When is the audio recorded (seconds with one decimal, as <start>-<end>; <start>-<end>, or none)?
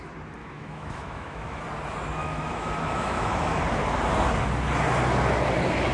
0.0-0.4; 1.6-2.2; 3.6-5.9